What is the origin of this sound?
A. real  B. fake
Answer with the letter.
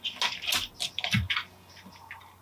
A